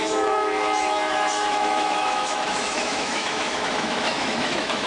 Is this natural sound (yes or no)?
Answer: no